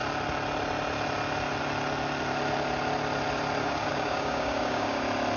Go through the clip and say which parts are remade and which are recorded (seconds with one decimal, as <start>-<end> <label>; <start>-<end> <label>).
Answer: 0.0-3.6 recorded; 3.6-5.0 remade; 5.0-5.4 recorded